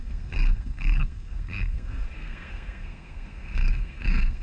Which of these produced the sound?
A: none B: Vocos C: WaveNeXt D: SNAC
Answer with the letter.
D